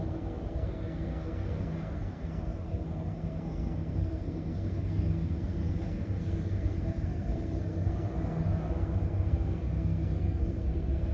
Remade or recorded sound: remade